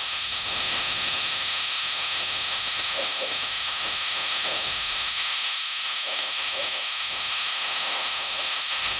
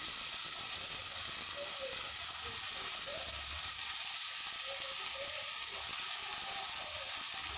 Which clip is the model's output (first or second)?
first